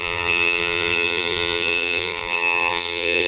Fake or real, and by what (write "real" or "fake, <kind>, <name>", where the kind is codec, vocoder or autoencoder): fake, vocoder, BigVGAN v2